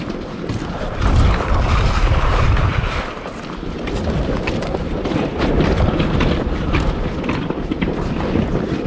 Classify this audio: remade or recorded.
remade